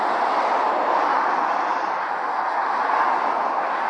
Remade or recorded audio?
recorded